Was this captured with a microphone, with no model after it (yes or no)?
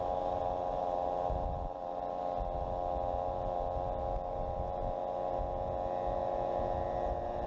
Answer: yes